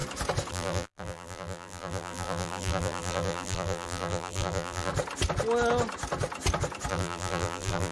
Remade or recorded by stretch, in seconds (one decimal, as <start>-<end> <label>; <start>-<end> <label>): 0.0-0.5 recorded; 0.5-4.9 remade; 4.9-6.9 recorded; 6.9-7.9 remade